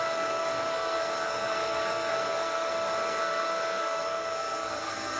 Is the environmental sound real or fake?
fake